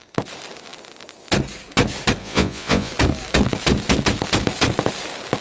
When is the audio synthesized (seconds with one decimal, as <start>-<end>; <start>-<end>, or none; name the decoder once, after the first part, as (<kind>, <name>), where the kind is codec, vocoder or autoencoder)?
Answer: 2.2-2.9 (vocoder, Vocos)